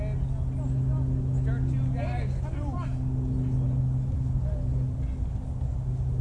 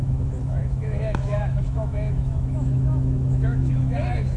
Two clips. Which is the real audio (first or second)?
first